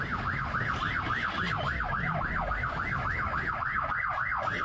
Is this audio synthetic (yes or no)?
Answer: no